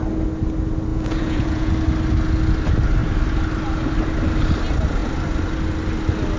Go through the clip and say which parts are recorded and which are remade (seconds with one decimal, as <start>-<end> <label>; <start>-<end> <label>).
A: 0.0-0.9 recorded; 0.9-1.7 remade; 1.7-6.4 recorded